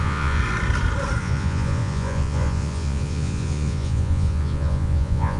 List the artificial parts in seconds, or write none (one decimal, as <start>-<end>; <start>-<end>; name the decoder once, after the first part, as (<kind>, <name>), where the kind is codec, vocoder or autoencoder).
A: 0.0-0.4 (vocoder, Vocos); 1.2-5.4